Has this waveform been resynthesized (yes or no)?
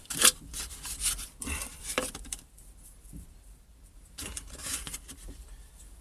yes